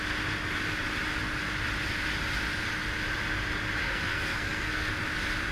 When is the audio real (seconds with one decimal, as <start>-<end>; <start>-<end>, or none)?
0.0-3.8; 4.9-5.5